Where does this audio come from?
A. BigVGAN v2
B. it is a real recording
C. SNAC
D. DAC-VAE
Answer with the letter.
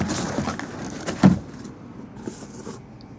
B